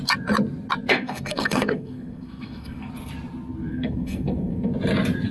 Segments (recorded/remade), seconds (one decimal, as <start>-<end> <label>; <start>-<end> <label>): 0.0-0.9 recorded; 0.9-2.9 remade; 2.9-3.7 recorded; 3.7-4.7 remade; 4.7-5.3 recorded